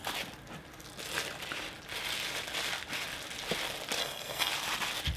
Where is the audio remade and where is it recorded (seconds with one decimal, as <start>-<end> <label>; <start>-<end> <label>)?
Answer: 0.0-4.0 recorded; 4.0-4.5 remade; 4.5-5.2 recorded